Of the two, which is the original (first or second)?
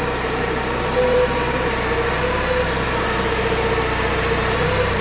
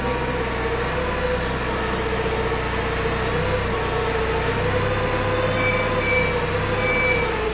second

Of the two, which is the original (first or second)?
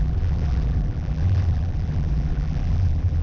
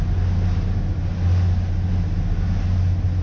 second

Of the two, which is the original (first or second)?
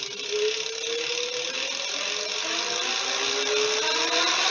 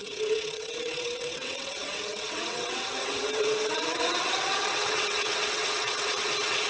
first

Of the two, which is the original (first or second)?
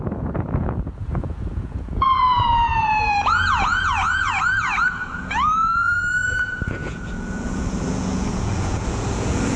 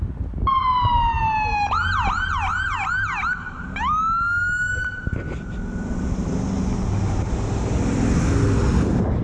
second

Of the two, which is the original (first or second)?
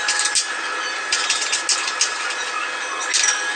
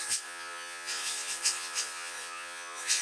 first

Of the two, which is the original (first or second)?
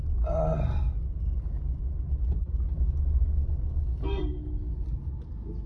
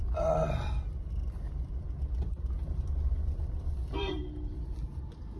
first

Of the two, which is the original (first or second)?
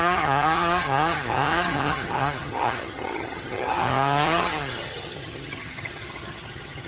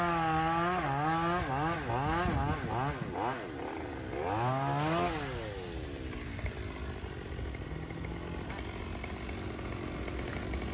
second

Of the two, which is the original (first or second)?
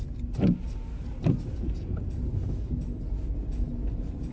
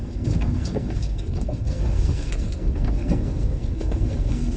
first